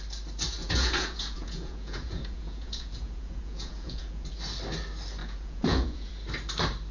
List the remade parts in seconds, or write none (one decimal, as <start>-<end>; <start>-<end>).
0.6-4.3; 5.2-6.1